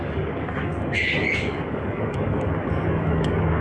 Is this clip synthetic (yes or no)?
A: yes